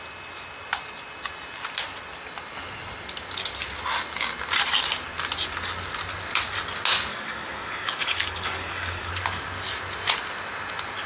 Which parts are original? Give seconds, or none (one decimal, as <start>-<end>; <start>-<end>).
0.0-7.1; 9.1-11.1